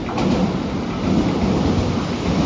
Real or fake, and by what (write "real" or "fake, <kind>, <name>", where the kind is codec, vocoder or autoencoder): real